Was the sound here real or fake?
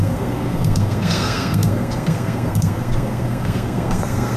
fake